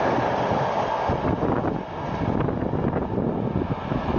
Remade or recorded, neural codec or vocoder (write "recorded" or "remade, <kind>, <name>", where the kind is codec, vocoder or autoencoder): recorded